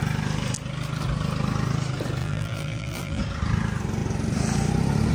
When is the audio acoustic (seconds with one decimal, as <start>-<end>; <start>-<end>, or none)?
0.0-2.2; 3.2-5.1